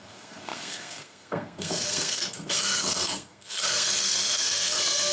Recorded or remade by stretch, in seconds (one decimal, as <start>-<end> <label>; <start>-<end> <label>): 0.0-5.1 remade

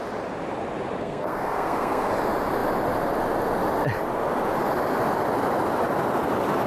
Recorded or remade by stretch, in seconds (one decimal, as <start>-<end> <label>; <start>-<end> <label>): 0.0-1.0 recorded; 1.0-2.1 remade; 2.1-6.7 recorded

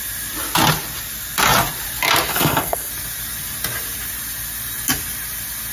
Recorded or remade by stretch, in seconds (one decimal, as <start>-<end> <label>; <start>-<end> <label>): 0.0-2.3 recorded; 2.3-2.9 remade; 2.9-5.7 recorded

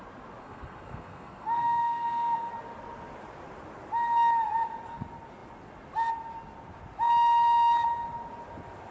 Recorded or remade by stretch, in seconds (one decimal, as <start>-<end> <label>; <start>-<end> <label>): 0.0-0.4 recorded; 0.4-2.5 remade; 2.5-8.9 recorded

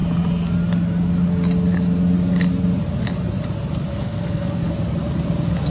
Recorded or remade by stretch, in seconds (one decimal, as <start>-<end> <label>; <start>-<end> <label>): 0.0-3.9 recorded; 3.9-4.7 remade; 4.7-5.7 recorded

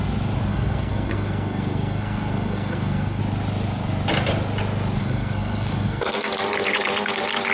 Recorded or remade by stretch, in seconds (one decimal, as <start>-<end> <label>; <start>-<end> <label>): 0.0-0.5 recorded; 0.5-3.2 remade; 3.2-5.0 recorded; 5.0-6.3 remade; 6.3-7.5 recorded